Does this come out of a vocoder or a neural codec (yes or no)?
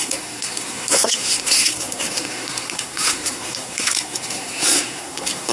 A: yes